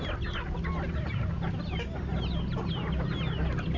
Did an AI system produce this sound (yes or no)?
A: no